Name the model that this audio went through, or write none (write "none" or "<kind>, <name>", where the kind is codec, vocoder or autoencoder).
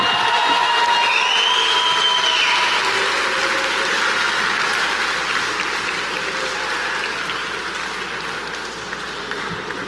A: none